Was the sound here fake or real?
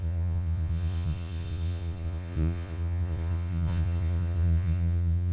fake